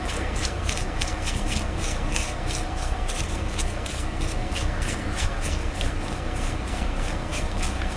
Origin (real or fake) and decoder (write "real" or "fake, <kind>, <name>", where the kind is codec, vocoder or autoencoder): fake, codec, SNAC